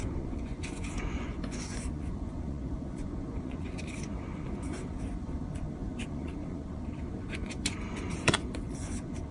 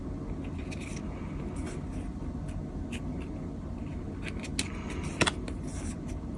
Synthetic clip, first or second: first